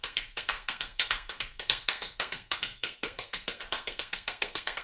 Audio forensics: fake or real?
fake